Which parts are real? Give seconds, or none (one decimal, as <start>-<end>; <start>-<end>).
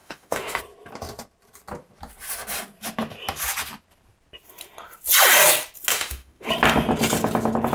0.6-5.9; 6.5-7.7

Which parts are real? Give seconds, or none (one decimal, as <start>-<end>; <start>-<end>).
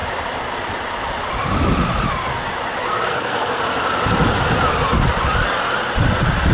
0.0-2.8; 3.6-6.5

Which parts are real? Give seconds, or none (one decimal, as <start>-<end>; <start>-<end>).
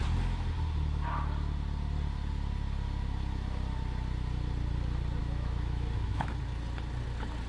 0.0-5.2; 6.3-7.5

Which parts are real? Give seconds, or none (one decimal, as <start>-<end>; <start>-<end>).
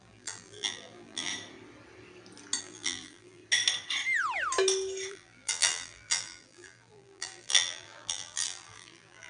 1.3-2.6; 3.4-5.1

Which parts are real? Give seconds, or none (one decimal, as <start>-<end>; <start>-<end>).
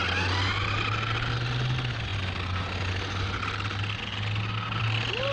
0.0-5.3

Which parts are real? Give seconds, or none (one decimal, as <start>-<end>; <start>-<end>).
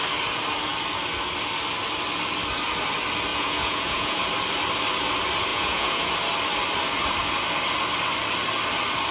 0.0-3.3; 4.2-5.5; 6.1-9.1